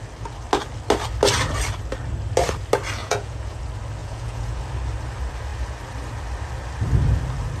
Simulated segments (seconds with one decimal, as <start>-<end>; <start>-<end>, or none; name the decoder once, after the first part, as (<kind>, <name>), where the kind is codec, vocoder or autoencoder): 3.0-3.6 (vocoder, Vocos); 4.0-4.6